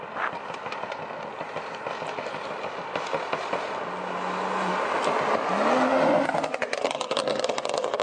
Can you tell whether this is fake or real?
real